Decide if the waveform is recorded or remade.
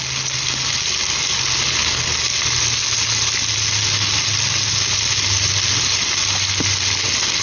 recorded